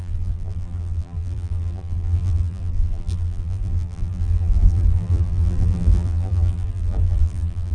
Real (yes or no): no